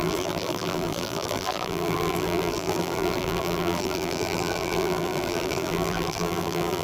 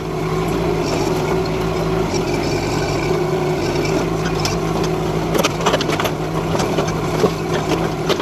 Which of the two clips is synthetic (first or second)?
first